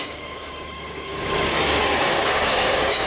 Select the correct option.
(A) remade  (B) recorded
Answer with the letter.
A